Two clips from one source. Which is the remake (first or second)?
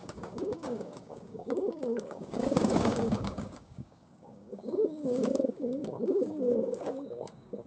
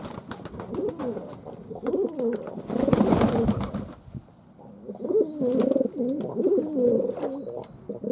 first